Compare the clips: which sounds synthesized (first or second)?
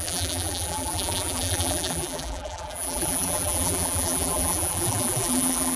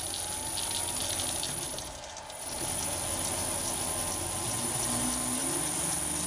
first